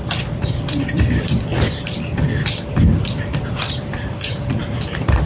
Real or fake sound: fake